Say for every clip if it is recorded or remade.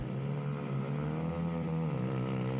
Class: recorded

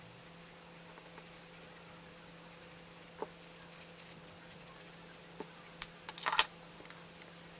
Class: recorded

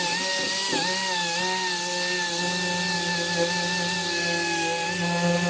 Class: recorded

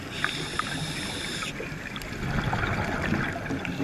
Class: recorded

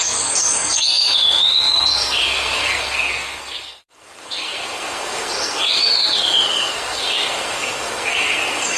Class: remade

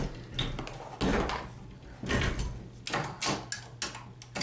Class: recorded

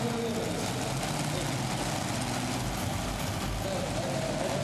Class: recorded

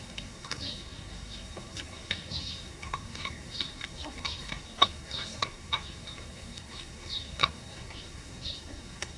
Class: remade